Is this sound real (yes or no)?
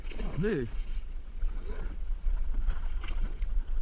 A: no